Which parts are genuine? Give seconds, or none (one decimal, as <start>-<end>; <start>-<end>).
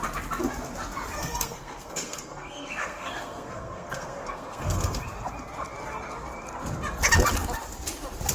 0.0-1.2; 5.0-8.3